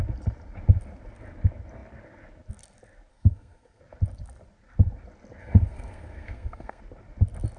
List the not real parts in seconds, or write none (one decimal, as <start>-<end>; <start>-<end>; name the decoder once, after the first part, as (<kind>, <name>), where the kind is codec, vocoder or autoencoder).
3.1-3.8 (codec, SNAC); 5.4-6.8